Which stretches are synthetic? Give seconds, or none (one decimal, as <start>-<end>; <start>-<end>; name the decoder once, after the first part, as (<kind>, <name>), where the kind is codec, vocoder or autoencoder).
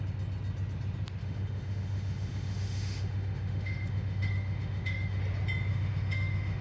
1.2-5.2 (autoencoder, DAC-VAE); 5.7-6.6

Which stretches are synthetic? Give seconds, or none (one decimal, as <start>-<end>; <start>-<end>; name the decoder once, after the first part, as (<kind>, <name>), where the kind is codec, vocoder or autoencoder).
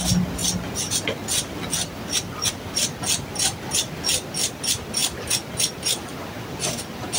none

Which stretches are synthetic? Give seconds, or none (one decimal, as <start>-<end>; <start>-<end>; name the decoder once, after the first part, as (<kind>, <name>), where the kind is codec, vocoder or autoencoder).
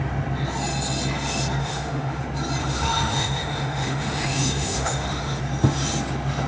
1.6-2.2 (autoencoder, DAC-VAE); 2.6-5.4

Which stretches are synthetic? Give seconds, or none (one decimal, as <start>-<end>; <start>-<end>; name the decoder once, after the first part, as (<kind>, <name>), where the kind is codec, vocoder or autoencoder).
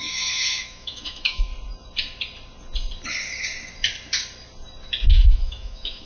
0.0-1.5 (autoencoder, DAC-VAE); 5.1-6.0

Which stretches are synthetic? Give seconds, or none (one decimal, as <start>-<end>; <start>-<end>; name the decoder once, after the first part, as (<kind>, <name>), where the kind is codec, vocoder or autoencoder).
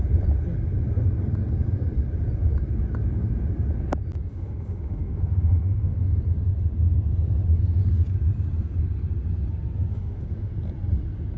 4.3-6.0 (autoencoder, DAC-VAE); 9.9-10.5